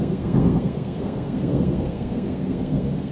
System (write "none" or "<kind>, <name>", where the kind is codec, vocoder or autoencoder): codec, SNAC